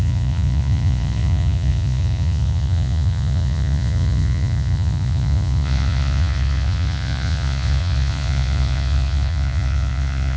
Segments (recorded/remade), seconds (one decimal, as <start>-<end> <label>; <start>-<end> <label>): 0.0-10.4 remade

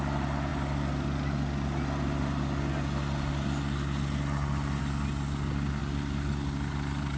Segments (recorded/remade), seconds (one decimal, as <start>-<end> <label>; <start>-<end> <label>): 0.0-7.2 recorded